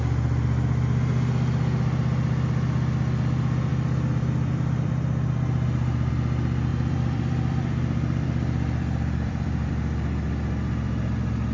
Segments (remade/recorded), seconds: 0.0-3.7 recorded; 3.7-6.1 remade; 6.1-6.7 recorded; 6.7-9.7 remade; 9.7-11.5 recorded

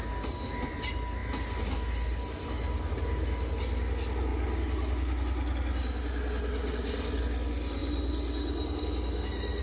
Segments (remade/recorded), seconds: 0.0-9.6 recorded

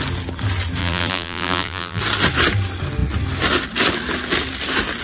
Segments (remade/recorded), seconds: 0.0-0.8 recorded; 0.8-2.0 remade; 2.0-5.0 recorded

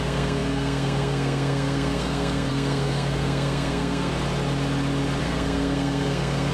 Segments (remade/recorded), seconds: 0.0-4.1 remade; 4.1-5.2 recorded; 5.2-6.5 remade